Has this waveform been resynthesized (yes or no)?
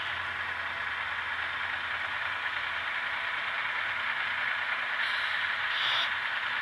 no